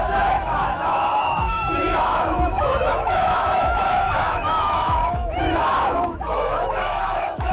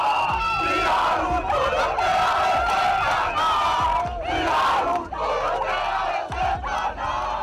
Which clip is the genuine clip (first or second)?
second